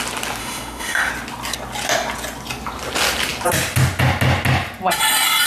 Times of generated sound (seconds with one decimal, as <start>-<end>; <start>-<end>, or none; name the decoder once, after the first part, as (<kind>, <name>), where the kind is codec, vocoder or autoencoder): 0.4-1.1 (autoencoder, DAC-VAE)